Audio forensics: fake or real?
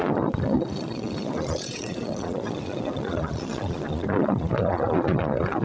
fake